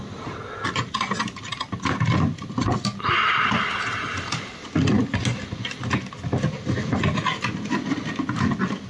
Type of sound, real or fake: real